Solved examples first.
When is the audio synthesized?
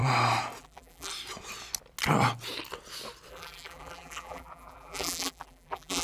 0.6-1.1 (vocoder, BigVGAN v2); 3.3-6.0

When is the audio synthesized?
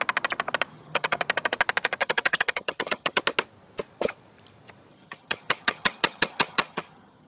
0.7-1.2 (vocoder, HiFi-GAN); 2.0-3.2; 4.9-7.3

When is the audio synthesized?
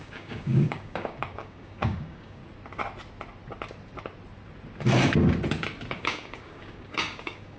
0.0-2.4 (codec, DAC); 5.9-7.6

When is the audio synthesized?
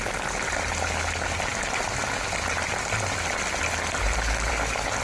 none